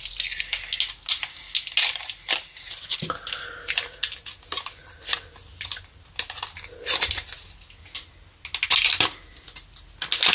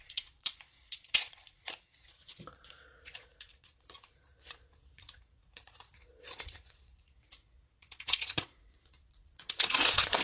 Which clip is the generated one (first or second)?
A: second